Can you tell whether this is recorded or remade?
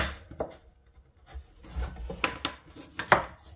recorded